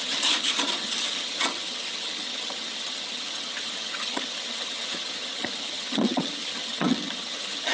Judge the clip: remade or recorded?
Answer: remade